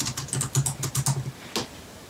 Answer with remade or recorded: recorded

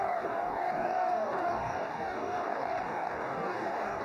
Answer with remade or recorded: remade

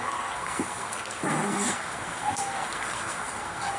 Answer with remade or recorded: remade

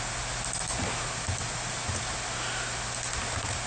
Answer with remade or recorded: recorded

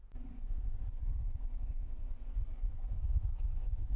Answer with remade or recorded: remade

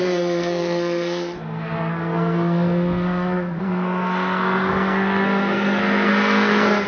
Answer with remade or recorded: remade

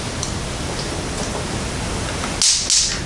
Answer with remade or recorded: recorded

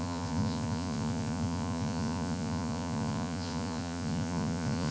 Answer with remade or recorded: remade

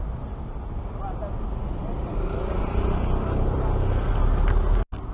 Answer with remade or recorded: recorded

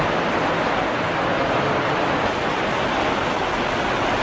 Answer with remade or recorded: recorded